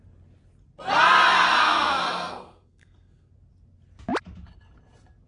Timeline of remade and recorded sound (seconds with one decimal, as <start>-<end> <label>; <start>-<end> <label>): 0.0-1.6 recorded; 1.6-3.3 remade; 3.3-5.3 recorded